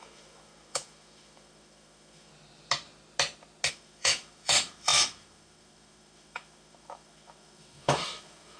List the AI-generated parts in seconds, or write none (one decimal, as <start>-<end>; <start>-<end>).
0.0-2.3; 3.7-8.6